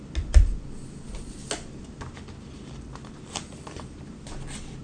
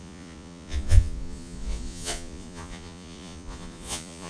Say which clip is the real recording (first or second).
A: first